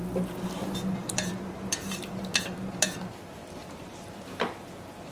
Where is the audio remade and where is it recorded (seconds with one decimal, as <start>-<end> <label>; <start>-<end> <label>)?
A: 0.0-1.0 recorded; 1.0-3.0 remade; 3.0-3.4 recorded; 3.4-4.2 remade; 4.2-5.1 recorded